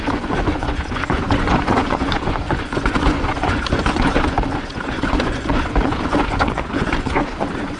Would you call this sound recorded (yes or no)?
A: no